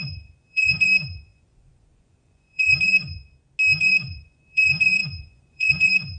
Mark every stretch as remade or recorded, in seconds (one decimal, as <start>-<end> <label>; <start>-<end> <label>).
0.0-3.2 remade; 3.2-3.8 recorded; 3.8-6.2 remade